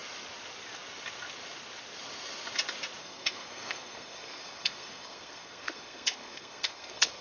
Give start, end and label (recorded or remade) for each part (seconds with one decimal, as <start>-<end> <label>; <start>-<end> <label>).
0.0-3.0 recorded; 3.0-7.2 remade